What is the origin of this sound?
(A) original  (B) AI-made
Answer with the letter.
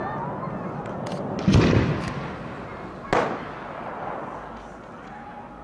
A